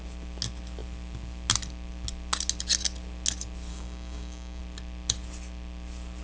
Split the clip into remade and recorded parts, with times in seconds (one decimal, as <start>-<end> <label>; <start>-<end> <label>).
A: 0.0-3.7 recorded; 3.7-4.6 remade; 4.6-6.2 recorded